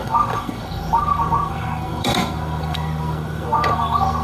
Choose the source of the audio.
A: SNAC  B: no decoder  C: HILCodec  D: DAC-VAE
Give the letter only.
A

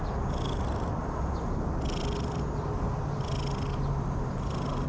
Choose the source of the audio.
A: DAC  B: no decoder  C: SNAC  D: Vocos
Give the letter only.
B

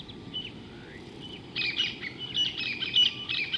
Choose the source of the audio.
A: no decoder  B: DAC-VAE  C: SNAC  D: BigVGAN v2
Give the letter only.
A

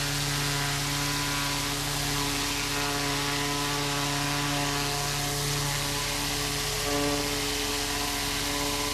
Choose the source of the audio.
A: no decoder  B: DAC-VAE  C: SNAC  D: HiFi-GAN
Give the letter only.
A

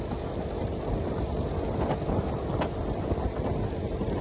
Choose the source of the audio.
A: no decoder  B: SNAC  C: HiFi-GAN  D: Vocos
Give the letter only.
A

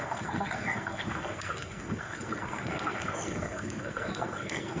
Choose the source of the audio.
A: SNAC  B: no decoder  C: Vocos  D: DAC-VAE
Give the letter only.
A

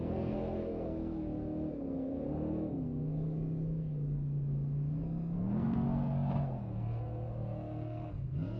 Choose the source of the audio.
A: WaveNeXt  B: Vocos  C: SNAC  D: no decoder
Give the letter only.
C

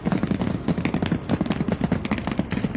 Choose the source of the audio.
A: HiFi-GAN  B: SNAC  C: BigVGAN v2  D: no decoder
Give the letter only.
D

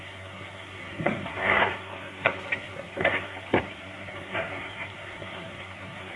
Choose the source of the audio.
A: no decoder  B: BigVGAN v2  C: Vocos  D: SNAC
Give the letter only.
D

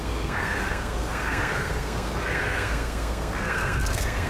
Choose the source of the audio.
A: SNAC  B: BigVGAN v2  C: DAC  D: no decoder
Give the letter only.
A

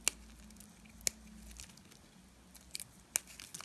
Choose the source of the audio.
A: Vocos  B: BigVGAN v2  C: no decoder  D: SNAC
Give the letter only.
C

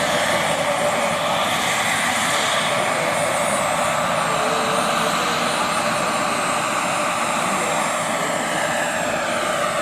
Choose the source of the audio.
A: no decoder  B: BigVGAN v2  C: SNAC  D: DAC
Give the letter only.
A